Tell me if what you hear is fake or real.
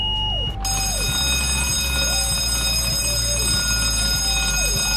real